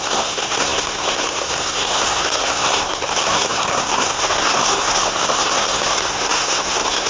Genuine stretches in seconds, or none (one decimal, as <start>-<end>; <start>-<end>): none